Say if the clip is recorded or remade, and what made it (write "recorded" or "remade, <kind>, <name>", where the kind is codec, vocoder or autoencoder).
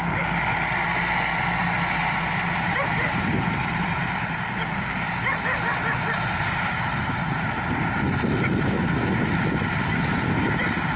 recorded